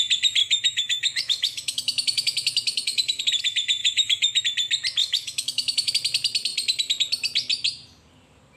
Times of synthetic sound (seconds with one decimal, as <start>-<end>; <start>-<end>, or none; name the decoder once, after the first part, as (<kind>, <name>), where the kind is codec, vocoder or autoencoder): 0.4-3.2 (autoencoder, DAC-VAE); 3.8-4.4; 5.0-5.9